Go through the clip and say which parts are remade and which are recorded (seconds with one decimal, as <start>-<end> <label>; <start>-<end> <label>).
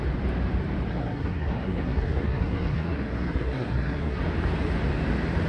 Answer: 0.0-0.9 recorded; 0.9-4.2 remade; 4.2-5.5 recorded